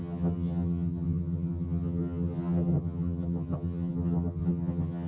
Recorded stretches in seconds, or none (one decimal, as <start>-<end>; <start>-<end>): none